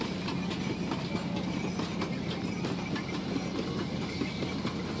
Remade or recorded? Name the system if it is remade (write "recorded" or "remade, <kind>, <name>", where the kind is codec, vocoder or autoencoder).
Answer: recorded